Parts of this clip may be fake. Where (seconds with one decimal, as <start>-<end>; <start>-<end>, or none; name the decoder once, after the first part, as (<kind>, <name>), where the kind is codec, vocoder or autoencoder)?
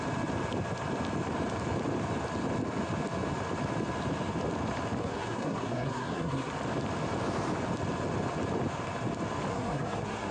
5.0-6.5 (codec, SNAC); 9.5-10.3